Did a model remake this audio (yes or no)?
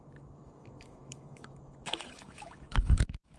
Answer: yes